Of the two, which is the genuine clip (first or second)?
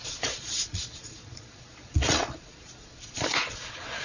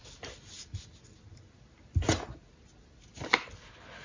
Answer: second